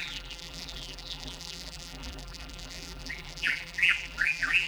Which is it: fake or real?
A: fake